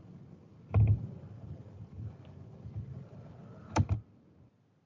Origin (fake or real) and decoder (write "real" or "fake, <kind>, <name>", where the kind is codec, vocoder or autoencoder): real